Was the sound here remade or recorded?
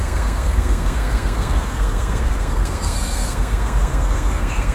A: remade